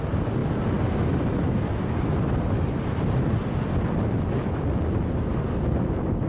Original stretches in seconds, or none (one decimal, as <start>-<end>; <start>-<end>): 0.0-6.3